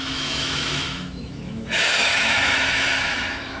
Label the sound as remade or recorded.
remade